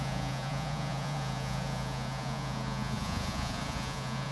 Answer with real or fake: fake